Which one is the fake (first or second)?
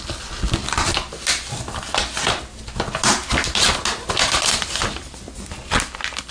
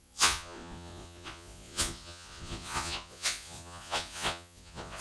second